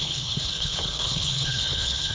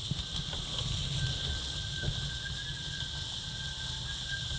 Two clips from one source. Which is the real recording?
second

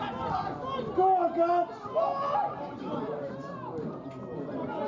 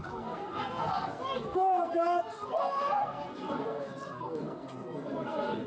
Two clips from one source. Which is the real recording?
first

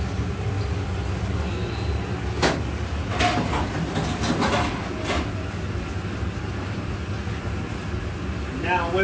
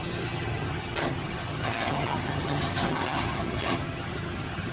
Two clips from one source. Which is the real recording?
first